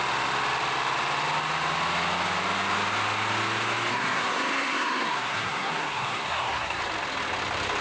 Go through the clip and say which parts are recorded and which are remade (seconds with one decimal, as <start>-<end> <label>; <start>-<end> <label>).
0.0-3.9 recorded; 3.9-6.8 remade; 6.8-7.8 recorded